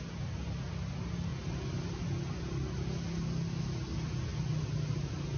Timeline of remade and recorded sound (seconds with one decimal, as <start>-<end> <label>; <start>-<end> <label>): 0.0-5.4 recorded